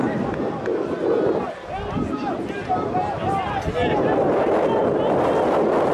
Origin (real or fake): real